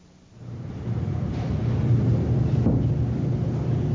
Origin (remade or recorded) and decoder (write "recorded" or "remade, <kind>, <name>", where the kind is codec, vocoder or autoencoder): remade, vocoder, BigVGAN v2